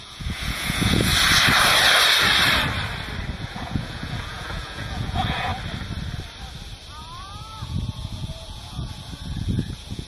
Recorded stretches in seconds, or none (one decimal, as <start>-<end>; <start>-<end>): 1.1-3.3; 5.5-7.0